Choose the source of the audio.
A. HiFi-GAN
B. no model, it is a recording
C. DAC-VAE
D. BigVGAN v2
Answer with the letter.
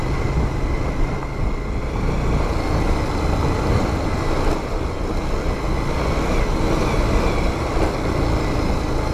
B